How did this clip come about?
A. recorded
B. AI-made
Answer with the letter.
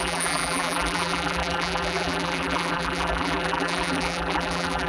B